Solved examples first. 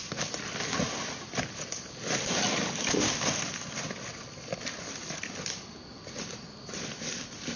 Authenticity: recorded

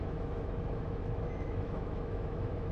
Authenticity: remade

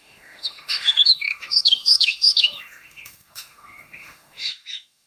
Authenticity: remade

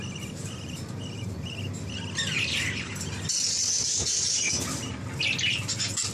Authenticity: recorded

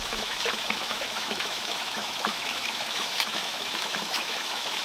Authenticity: remade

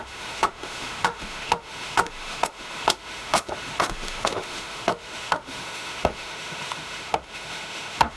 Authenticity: remade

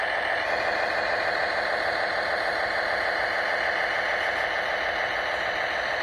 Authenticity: recorded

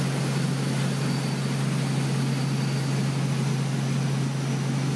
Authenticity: recorded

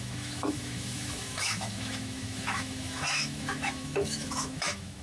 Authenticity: remade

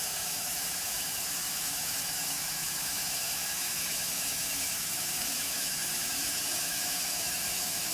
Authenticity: remade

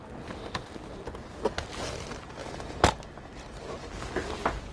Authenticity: recorded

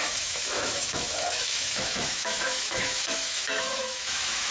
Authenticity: remade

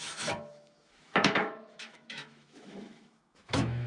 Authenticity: remade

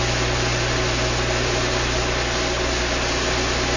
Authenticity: recorded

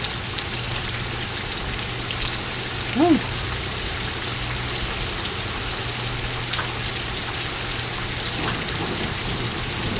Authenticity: recorded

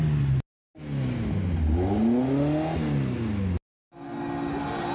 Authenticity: recorded